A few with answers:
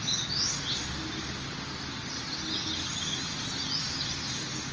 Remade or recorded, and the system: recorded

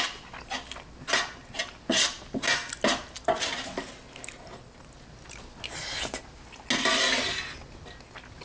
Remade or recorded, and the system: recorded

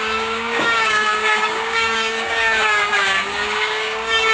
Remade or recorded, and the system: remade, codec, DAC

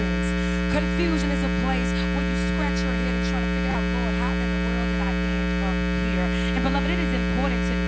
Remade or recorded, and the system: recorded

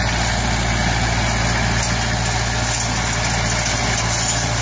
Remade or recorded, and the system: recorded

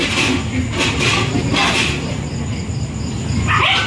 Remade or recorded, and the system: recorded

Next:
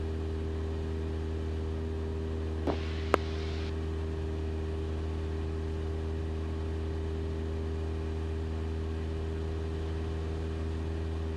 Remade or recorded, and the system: recorded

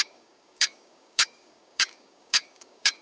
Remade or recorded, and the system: remade, codec, DAC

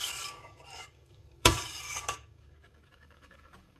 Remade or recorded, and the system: remade, codec, DAC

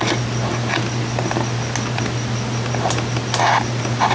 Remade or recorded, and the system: recorded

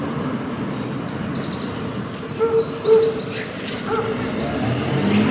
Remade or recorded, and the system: recorded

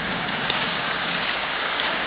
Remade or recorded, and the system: remade, codec, DAC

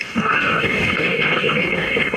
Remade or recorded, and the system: remade, codec, DAC